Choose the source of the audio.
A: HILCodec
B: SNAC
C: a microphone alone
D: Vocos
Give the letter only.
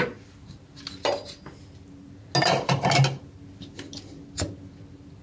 C